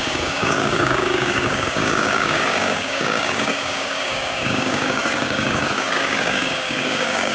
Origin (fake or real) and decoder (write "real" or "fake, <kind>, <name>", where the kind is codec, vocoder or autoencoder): fake, codec, DAC